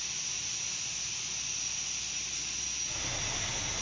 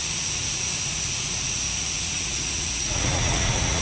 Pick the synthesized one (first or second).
second